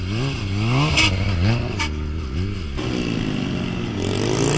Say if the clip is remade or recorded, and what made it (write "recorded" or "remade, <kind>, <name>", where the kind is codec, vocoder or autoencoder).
recorded